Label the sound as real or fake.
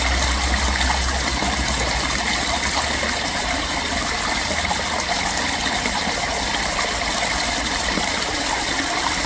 real